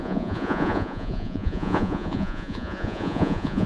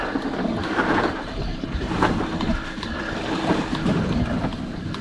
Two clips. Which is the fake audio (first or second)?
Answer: first